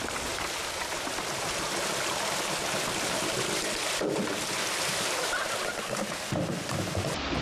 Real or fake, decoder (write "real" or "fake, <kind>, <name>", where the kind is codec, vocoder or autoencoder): real